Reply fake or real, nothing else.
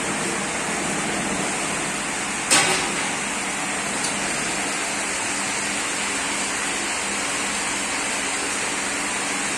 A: real